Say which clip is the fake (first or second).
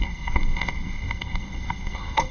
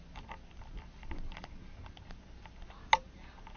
first